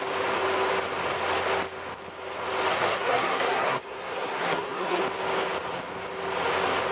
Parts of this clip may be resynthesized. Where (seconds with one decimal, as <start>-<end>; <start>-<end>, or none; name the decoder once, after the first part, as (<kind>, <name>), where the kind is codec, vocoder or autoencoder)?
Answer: 2.7-5.0 (codec, SNAC)